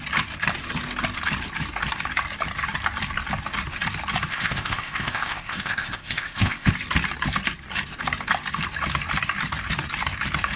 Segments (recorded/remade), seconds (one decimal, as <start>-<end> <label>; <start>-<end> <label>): 0.0-4.3 recorded; 4.3-6.7 remade; 6.7-10.6 recorded